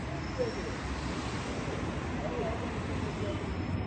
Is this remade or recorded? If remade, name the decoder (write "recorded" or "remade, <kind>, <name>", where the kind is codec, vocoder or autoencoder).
recorded